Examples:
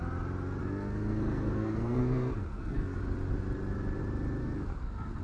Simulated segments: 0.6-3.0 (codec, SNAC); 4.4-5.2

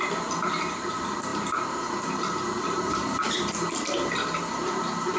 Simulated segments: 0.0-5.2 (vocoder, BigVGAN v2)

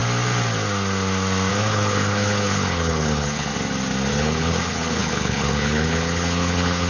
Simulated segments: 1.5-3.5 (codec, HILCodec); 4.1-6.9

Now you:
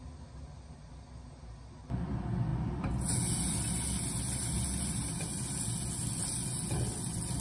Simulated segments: none